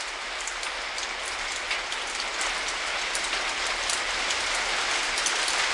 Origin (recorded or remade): recorded